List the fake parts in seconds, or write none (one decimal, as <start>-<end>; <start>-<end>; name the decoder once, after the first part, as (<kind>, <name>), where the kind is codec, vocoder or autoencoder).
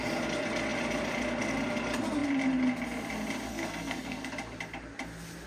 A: 3.5-4.3 (codec, SNAC)